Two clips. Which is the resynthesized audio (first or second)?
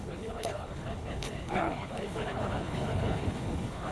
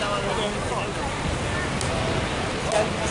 first